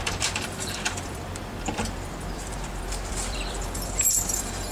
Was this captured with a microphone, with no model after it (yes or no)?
no